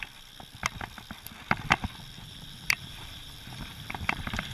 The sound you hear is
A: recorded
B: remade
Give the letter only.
B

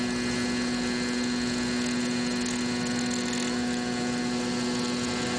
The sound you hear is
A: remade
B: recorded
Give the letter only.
B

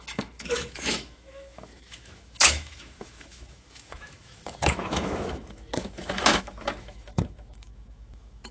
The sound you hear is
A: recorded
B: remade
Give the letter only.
B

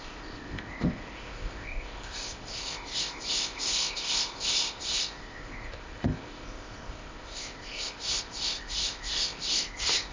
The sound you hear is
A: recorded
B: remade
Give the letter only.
B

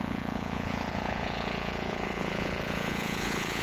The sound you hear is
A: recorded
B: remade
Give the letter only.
B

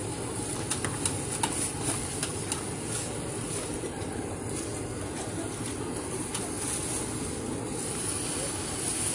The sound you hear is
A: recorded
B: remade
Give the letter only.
A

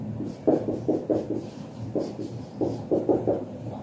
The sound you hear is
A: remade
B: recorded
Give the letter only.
A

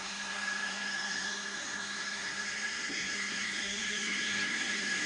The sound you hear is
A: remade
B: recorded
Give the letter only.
A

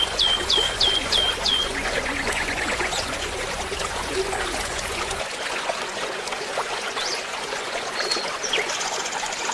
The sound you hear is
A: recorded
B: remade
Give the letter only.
B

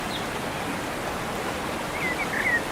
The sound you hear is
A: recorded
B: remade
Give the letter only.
A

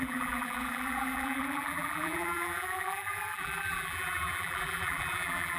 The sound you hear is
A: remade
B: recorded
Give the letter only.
A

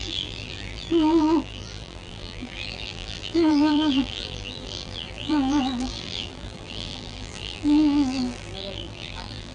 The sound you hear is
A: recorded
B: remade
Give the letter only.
B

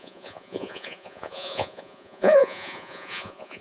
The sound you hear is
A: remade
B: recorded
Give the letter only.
A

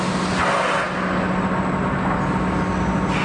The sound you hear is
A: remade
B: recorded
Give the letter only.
B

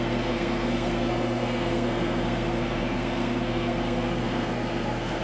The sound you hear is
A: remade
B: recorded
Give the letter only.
A